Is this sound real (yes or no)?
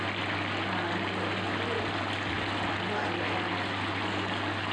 yes